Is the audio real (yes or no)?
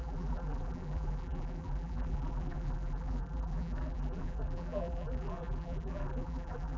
no